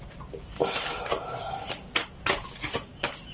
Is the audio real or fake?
real